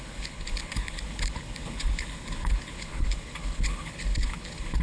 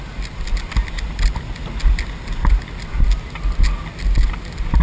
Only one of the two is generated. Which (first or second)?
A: first